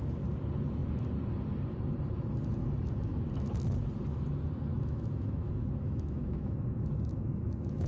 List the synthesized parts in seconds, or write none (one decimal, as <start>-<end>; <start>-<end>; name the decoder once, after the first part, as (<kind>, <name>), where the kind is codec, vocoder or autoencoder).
4.7-7.9 (autoencoder, DAC-VAE)